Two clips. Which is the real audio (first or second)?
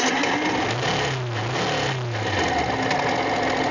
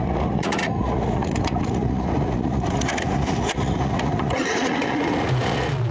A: first